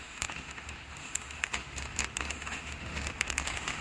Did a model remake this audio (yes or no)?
yes